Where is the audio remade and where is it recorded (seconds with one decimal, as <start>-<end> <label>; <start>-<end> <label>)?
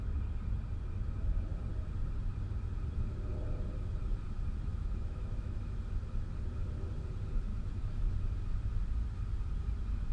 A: 0.0-4.7 recorded; 4.7-5.8 remade; 5.8-7.5 recorded; 7.5-8.1 remade; 8.1-10.1 recorded